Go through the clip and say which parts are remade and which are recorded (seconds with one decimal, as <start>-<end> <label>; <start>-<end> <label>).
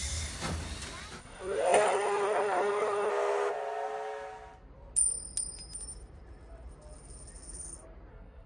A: 0.0-1.2 recorded; 1.2-3.1 remade; 3.1-8.1 recorded; 8.1-8.5 remade